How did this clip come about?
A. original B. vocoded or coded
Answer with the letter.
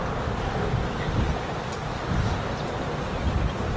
A